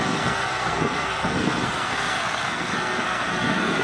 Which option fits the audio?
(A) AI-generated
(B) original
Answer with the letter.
A